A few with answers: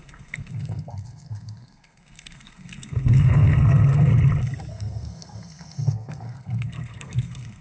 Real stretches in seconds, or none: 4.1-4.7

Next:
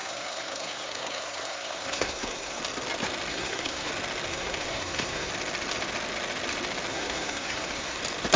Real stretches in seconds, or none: 2.6-3.3; 3.9-4.3; 5.3-6.9; 8.0-8.4